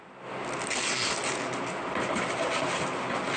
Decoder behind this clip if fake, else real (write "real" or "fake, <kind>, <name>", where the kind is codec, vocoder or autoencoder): real